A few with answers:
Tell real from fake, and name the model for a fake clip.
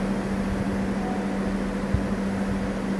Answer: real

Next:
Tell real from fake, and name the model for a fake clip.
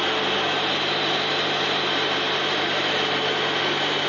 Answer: real